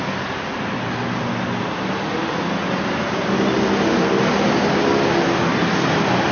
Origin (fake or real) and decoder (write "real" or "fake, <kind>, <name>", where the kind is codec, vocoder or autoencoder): real